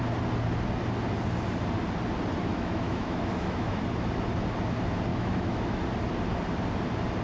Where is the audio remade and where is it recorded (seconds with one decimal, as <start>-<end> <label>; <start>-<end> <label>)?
0.0-2.5 recorded; 2.5-3.8 remade; 3.8-5.1 recorded; 5.1-5.8 remade; 5.8-7.2 recorded